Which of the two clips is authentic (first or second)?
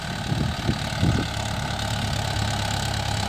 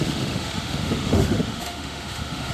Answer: first